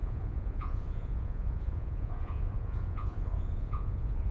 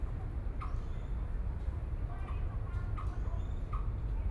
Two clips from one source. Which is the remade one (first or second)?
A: first